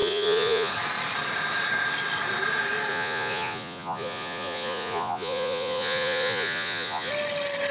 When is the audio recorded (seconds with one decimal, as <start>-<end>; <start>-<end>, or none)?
0.7-2.9; 7.1-7.7